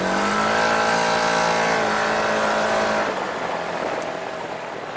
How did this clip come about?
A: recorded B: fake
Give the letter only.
A